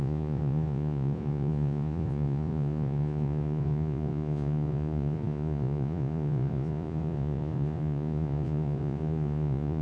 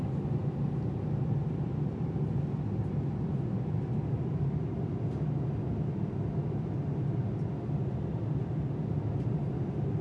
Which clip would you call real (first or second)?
second